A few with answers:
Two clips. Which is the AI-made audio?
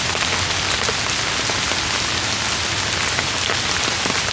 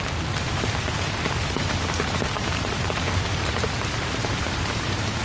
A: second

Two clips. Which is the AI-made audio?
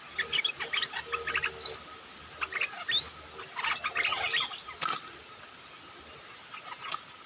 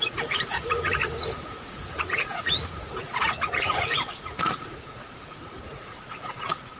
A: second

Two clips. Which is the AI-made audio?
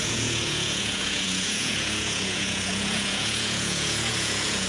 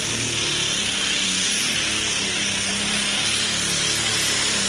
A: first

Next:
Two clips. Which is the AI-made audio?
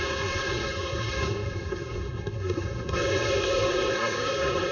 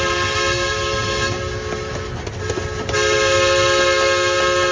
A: first